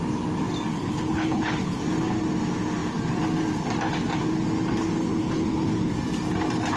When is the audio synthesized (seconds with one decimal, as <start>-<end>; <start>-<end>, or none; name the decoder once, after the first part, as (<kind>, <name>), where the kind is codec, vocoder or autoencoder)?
0.7-1.8 (codec, HILCodec); 5.0-5.9